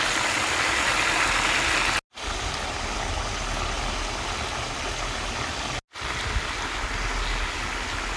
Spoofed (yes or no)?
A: no